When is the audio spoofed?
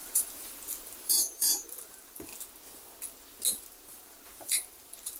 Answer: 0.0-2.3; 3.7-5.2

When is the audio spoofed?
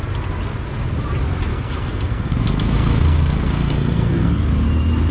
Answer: 1.5-4.4